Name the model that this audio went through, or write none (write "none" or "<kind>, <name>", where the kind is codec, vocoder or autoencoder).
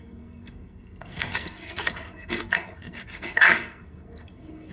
codec, SNAC